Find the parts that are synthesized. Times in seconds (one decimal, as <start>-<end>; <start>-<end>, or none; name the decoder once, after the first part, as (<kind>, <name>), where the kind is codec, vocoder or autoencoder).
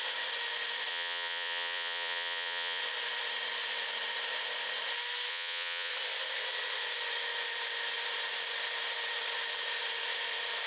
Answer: 0.9-2.8 (vocoder, Vocos); 5.3-5.9